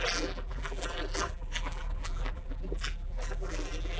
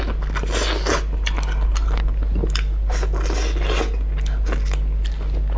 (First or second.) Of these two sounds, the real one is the second